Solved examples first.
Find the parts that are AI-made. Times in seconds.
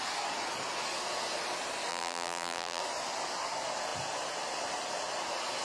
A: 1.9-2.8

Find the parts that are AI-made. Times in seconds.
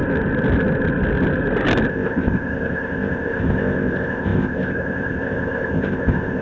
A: 1.9-6.4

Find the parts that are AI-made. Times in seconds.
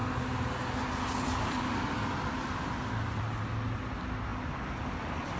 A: none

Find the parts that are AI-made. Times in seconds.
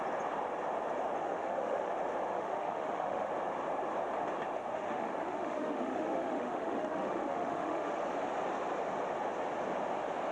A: 1.2-1.9; 2.3-3.3; 4.7-8.0